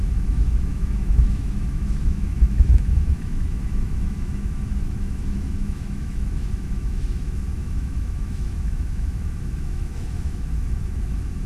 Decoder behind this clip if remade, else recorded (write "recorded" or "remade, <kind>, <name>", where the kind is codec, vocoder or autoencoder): remade, autoencoder, DAC-VAE